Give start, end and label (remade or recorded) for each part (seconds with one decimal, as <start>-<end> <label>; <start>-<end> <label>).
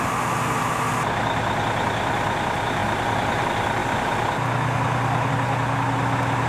0.0-6.5 recorded